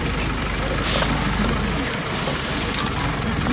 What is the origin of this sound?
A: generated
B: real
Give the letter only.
B